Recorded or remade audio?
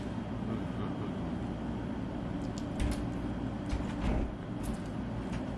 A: recorded